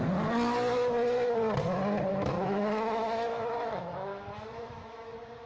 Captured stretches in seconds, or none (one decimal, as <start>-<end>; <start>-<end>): 0.0-2.1